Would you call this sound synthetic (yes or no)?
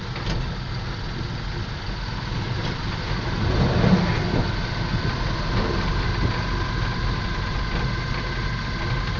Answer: no